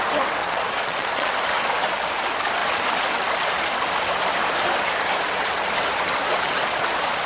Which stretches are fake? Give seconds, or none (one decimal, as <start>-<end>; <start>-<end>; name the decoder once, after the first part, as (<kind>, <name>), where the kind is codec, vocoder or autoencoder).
0.4-1.3 (vocoder, Vocos)

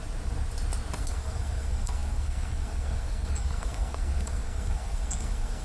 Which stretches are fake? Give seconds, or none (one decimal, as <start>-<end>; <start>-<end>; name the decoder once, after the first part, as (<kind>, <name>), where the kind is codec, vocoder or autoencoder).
1.0-5.6 (codec, SNAC)

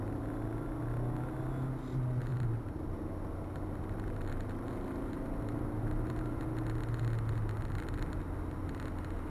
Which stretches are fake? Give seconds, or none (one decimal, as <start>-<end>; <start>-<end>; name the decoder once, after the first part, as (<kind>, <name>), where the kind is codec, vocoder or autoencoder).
2.3-6.4 (vocoder, BigVGAN v2)

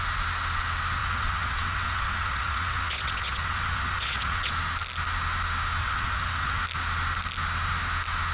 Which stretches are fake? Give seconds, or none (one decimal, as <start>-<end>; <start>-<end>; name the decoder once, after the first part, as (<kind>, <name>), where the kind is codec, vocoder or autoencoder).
1.0-4.5 (vocoder, WaveNeXt); 5.8-6.6

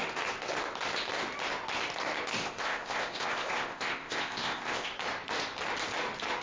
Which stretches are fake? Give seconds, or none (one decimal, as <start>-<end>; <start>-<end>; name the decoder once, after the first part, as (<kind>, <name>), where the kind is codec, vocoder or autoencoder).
2.4-4.9 (codec, ZipCodec)